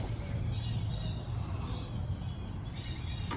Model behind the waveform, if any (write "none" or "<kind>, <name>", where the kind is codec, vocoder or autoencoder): none